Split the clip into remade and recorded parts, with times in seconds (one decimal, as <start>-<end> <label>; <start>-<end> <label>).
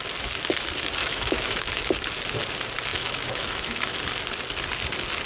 0.0-1.0 recorded; 1.0-1.9 remade; 1.9-2.9 recorded; 2.9-4.0 remade; 4.0-5.3 recorded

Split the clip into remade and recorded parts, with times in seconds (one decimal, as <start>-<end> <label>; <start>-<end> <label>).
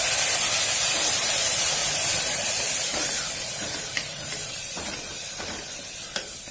0.0-0.7 recorded; 0.7-6.5 remade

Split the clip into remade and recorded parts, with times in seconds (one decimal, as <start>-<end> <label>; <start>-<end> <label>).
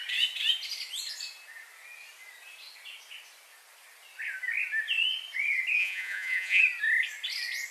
0.0-5.8 recorded; 5.8-6.6 remade; 6.6-7.7 recorded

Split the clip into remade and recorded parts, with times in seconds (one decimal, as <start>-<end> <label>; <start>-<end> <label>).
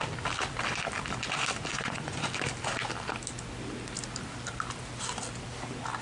0.0-1.7 recorded; 1.7-2.3 remade; 2.3-6.0 recorded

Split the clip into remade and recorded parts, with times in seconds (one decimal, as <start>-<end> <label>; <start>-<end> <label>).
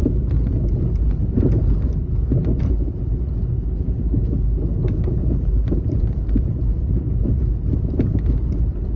0.0-5.2 recorded; 5.2-7.4 remade; 7.4-9.0 recorded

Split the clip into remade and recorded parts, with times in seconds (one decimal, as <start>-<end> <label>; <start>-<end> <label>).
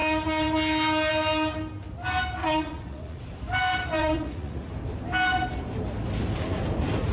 0.0-2.4 recorded; 2.4-3.2 remade; 3.2-4.0 recorded; 4.0-4.7 remade; 4.7-7.1 recorded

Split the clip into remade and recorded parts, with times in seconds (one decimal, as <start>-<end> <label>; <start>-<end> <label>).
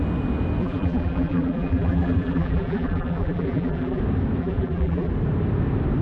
0.0-0.6 recorded; 0.6-4.0 remade; 4.0-4.4 recorded; 4.4-5.1 remade; 5.1-6.0 recorded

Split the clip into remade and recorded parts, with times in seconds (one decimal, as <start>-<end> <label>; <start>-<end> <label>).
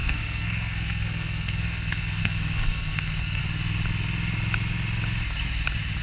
0.0-3.4 remade; 3.4-6.0 recorded